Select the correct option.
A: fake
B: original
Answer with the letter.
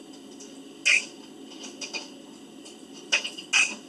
B